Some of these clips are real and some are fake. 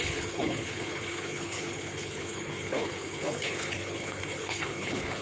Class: fake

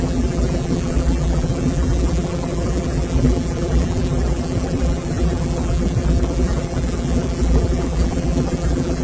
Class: fake